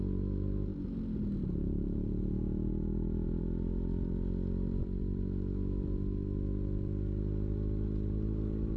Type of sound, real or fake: real